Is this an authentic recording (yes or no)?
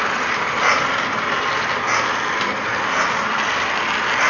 yes